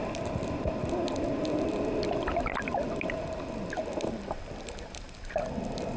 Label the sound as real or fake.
real